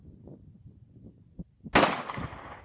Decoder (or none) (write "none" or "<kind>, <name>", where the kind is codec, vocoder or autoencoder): none